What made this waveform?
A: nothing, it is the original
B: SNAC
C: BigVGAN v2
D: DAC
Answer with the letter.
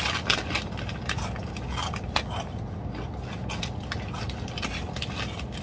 A